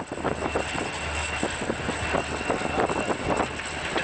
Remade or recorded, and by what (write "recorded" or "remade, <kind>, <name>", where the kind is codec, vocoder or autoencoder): recorded